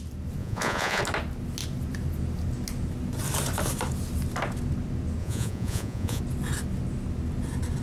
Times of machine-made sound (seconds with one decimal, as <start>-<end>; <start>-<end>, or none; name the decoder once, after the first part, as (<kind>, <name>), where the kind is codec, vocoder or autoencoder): 0.4-1.0 (vocoder, Vocos); 5.2-6.2